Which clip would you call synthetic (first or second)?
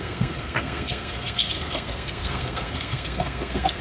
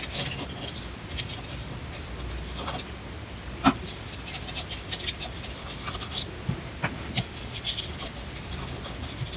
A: first